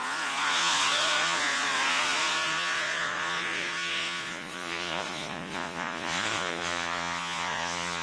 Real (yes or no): no